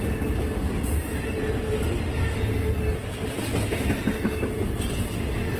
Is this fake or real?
real